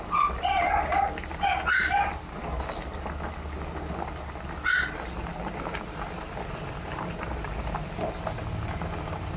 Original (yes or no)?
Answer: yes